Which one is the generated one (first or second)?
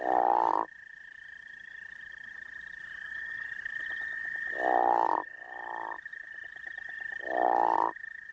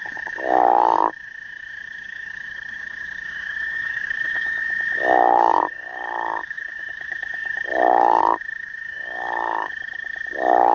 second